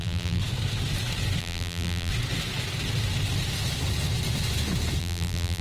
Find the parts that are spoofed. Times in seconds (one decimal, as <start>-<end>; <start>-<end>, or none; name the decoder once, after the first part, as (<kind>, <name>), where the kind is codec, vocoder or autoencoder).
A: 0.0-0.4 (vocoder, BigVGAN v2); 1.4-2.1; 5.0-5.6